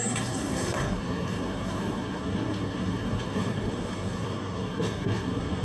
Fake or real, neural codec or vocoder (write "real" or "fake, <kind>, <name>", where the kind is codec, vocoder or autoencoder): fake, codec, SNAC